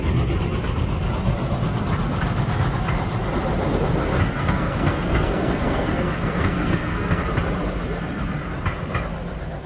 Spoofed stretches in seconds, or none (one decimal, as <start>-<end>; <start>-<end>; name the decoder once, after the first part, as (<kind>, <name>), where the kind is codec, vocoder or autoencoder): 4.1-7.2 (codec, SNAC)